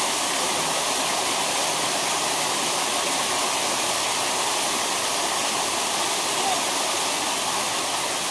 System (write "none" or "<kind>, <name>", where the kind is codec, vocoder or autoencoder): none